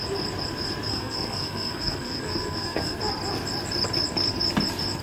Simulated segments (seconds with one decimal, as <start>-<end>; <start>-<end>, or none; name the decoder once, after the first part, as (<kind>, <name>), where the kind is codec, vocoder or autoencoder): 0.9-3.0 (codec, SNAC)